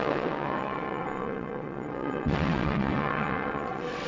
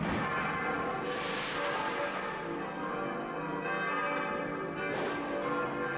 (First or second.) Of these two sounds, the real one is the second